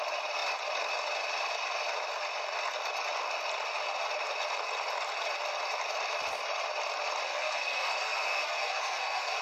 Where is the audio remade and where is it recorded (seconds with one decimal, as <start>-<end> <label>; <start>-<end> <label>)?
0.0-7.3 recorded; 7.3-9.4 remade